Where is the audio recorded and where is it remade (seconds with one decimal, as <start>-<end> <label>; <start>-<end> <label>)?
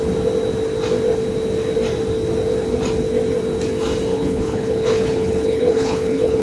0.0-4.1 recorded; 4.1-6.4 remade